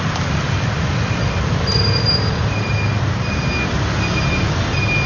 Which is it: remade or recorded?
recorded